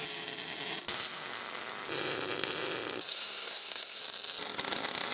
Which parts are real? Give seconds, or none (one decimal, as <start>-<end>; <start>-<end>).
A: 0.0-3.1; 4.0-5.1